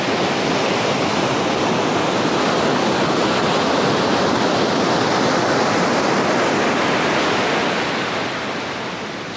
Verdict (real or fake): real